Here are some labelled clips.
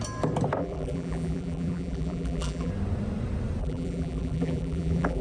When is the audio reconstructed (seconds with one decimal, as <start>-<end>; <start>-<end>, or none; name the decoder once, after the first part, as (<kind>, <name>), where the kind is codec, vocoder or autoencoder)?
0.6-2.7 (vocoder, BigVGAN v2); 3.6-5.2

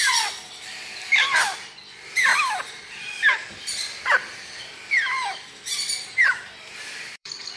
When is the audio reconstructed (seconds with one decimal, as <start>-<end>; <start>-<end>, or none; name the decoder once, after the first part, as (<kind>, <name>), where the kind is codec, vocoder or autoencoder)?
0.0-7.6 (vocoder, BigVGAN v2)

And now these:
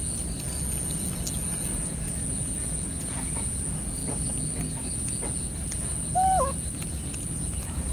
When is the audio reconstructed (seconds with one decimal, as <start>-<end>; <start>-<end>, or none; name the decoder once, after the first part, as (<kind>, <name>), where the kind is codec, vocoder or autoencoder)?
1.5-4.0 (vocoder, Vocos); 7.1-7.9